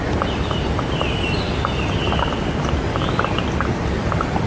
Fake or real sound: real